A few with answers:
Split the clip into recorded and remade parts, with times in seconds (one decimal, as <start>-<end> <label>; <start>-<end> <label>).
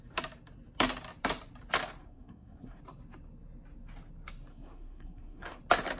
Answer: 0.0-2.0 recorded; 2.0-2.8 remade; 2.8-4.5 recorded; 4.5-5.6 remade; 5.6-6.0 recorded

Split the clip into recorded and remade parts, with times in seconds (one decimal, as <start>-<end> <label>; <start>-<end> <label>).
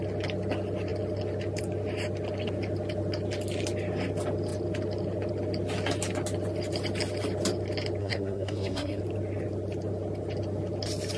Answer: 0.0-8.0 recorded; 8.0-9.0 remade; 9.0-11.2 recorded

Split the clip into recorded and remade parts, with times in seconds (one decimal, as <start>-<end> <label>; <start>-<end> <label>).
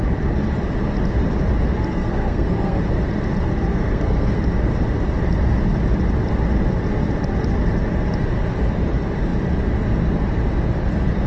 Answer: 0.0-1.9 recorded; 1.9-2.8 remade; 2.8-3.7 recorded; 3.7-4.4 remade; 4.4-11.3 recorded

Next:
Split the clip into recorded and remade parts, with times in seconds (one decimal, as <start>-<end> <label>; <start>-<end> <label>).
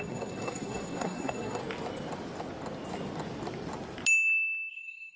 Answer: 0.0-1.6 remade; 1.6-4.7 recorded; 4.7-5.2 remade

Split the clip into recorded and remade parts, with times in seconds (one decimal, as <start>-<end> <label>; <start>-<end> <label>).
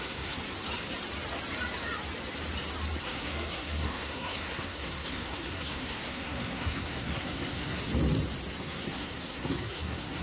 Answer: 0.0-0.4 remade; 0.4-3.0 recorded; 3.0-7.8 remade; 7.8-8.6 recorded; 8.6-10.2 remade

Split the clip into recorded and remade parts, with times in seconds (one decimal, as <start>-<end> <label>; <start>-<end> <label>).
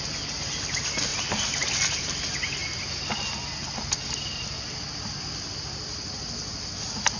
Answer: 0.0-7.2 recorded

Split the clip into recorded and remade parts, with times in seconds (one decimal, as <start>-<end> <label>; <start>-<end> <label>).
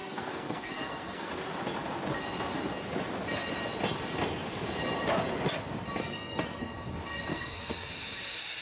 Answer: 0.0-1.3 remade; 1.3-6.0 recorded; 6.0-6.6 remade; 6.6-7.3 recorded; 7.3-7.9 remade; 7.9-8.6 recorded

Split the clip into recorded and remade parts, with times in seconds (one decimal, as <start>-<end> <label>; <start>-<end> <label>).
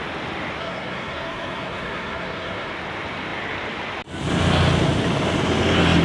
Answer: 0.0-0.6 recorded; 0.6-2.7 remade; 2.7-6.0 recorded